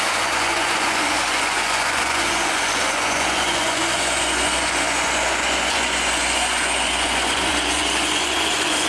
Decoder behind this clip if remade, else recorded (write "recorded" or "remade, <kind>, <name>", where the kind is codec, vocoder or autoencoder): remade, vocoder, Vocos